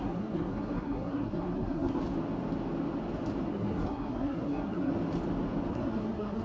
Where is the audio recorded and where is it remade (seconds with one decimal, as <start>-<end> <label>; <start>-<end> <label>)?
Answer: 0.0-2.0 remade; 2.0-3.5 recorded; 3.5-4.9 remade; 4.9-5.7 recorded; 5.7-6.4 remade